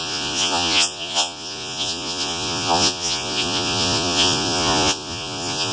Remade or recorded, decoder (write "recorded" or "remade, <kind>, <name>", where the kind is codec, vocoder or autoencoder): remade, vocoder, Vocos